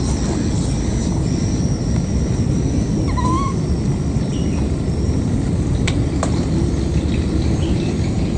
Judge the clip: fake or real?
real